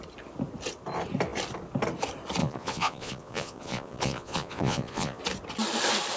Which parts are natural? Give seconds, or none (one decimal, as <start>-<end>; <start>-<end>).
0.0-2.4; 5.2-6.2